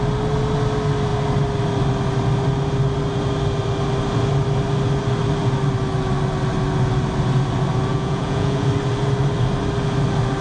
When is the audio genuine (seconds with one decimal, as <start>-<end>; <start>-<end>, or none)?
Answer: 0.0-7.9; 8.7-10.4